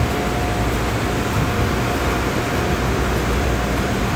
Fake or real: real